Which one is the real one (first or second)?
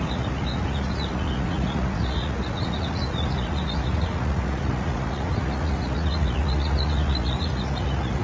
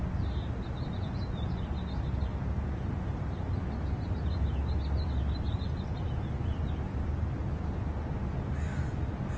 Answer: second